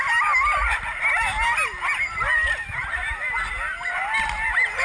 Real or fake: real